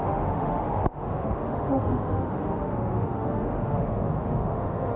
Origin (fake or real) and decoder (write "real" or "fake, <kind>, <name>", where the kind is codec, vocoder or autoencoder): fake, autoencoder, DAC-VAE